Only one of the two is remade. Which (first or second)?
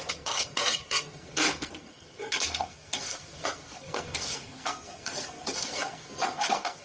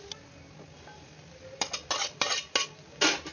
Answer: first